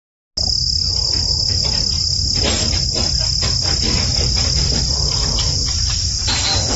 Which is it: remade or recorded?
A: recorded